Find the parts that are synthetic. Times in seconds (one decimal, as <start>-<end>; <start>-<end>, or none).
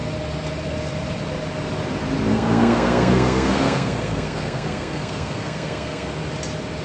2.3-6.1